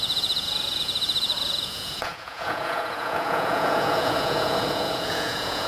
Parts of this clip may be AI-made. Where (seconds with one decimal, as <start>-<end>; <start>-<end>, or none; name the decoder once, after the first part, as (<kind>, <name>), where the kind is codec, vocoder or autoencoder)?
0.0-5.7 (vocoder, Vocos)